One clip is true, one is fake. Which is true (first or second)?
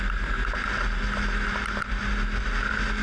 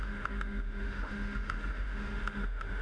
first